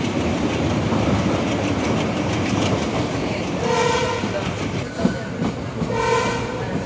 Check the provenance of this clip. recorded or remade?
recorded